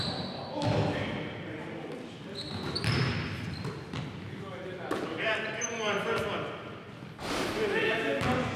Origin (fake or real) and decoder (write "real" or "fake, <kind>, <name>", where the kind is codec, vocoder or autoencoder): real